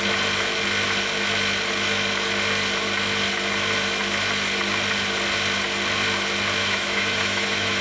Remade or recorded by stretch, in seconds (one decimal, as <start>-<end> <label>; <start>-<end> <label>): 0.0-6.6 recorded; 6.6-7.8 remade